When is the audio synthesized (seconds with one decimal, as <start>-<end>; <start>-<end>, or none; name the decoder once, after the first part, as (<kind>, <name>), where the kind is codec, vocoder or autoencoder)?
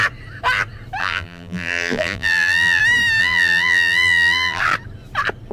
1.0-2.8 (vocoder, BigVGAN v2); 3.2-4.6